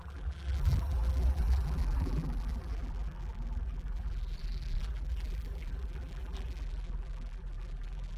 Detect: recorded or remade remade